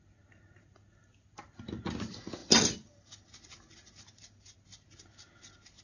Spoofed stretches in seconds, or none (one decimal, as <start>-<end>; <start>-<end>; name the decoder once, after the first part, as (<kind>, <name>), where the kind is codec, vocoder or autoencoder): none